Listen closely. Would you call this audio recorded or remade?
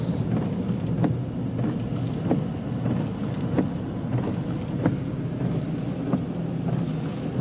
recorded